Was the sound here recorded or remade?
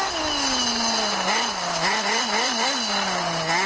recorded